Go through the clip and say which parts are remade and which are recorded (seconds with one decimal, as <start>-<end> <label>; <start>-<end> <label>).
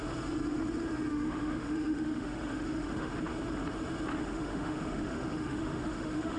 0.0-1.1 recorded; 1.1-3.1 remade; 3.1-4.2 recorded; 4.2-6.4 remade